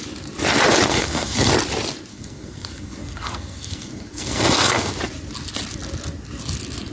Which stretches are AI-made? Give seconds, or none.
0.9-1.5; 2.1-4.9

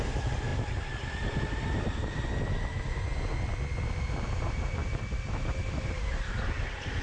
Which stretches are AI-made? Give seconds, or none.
none